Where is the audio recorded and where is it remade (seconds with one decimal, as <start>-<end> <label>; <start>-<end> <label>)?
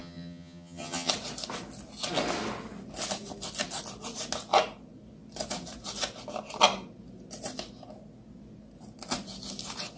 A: 0.0-1.1 remade; 1.1-10.0 recorded